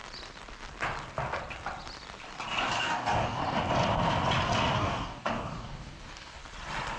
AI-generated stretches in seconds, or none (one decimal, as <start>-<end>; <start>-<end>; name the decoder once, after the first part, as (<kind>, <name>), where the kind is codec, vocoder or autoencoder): 2.8-3.4 (codec, DAC); 4.7-6.4